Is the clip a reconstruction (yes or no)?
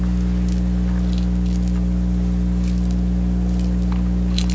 no